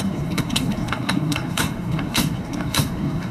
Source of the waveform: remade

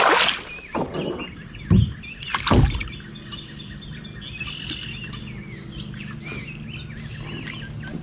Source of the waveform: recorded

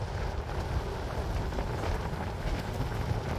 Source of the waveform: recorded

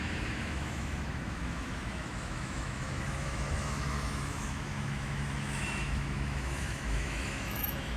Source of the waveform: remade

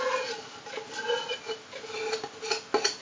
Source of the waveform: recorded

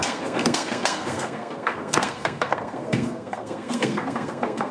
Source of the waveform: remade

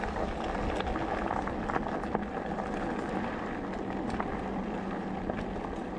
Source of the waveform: recorded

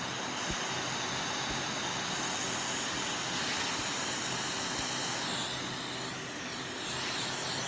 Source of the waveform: recorded